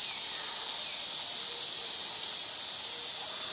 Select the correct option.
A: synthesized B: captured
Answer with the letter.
B